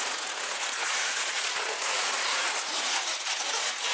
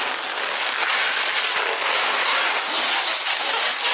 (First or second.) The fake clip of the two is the first